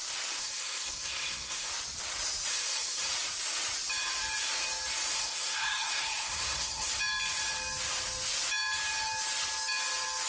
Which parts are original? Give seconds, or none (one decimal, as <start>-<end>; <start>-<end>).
0.0-0.4; 1.7-2.5; 3.1-5.1; 6.9-10.3